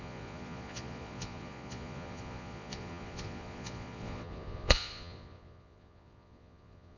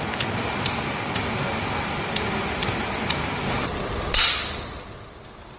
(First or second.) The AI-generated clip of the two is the first